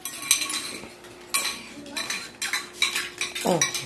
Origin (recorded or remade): recorded